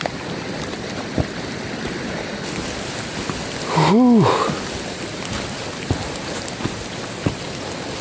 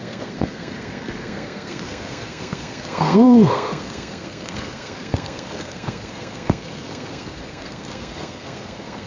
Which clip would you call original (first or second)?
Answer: first